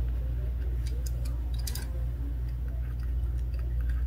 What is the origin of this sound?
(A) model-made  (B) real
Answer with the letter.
B